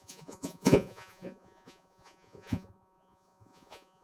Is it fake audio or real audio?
fake